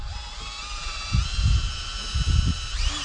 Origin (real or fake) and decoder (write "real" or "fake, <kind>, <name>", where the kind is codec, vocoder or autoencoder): real